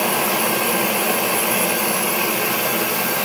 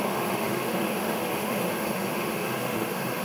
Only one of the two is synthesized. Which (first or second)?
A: second